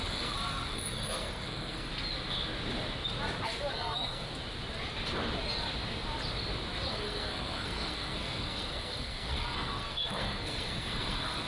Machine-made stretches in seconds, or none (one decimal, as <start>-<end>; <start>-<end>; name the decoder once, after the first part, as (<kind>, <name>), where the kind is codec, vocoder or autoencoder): 0.0-1.9 (codec, SNAC); 3.7-4.3; 6.9-11.5